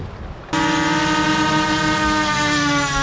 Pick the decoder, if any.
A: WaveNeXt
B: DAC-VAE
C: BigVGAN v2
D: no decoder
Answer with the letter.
D